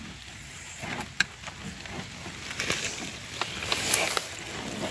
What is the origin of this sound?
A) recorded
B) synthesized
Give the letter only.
A